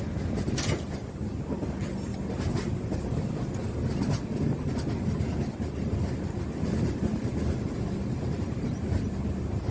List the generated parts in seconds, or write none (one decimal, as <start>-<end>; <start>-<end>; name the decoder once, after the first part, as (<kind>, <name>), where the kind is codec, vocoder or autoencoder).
none